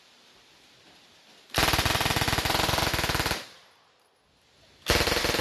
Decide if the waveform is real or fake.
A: real